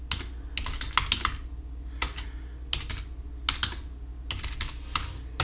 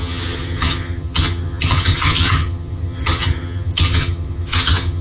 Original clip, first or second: first